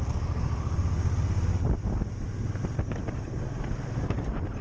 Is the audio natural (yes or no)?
yes